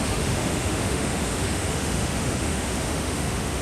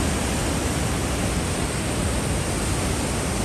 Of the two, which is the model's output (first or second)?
first